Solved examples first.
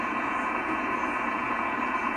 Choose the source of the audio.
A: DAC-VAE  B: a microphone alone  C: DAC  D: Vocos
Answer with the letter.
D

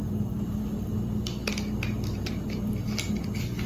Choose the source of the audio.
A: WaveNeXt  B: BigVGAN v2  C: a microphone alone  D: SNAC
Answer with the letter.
C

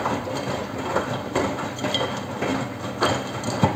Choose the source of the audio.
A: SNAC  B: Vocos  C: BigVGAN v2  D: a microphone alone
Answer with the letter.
D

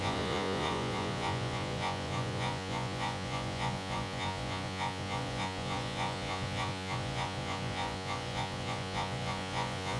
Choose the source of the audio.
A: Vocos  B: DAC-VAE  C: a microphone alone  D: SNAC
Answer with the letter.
A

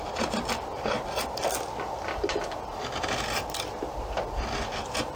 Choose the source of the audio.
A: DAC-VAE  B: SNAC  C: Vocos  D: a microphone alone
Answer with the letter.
D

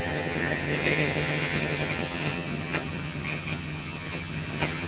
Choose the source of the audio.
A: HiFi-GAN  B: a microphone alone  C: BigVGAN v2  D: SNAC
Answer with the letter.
A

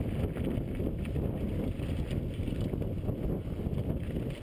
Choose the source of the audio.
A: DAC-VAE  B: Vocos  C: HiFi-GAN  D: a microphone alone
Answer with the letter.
D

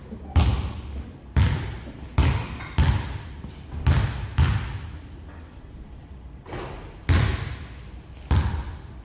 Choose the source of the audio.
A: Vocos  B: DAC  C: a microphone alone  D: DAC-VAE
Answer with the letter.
C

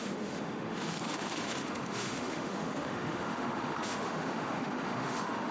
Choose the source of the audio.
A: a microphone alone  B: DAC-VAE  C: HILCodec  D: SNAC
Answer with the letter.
B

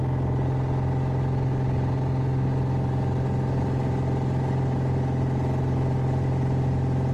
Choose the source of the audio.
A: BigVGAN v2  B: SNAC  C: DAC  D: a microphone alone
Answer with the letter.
D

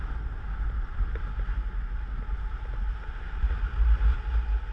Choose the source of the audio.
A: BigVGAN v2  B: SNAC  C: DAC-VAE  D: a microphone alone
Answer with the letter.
D